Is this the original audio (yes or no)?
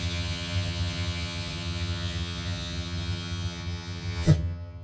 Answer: no